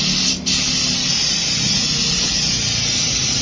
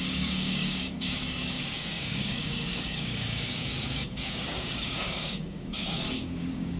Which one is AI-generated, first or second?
second